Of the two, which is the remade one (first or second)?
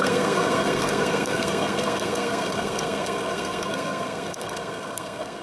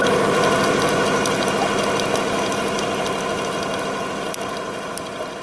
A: first